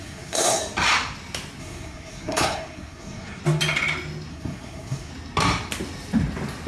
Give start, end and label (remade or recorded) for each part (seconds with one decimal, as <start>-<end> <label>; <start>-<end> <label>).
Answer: 0.0-0.6 remade; 0.6-1.6 recorded; 1.6-3.4 remade; 3.4-4.3 recorded; 4.3-5.1 remade; 5.1-6.7 recorded